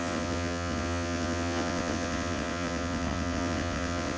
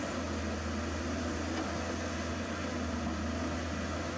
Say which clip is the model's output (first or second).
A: first